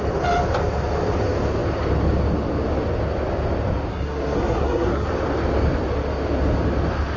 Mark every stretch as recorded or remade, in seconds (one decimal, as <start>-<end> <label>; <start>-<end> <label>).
0.0-3.9 recorded; 3.9-5.1 remade; 5.1-7.2 recorded